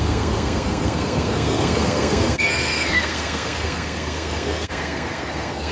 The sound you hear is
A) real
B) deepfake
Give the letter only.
B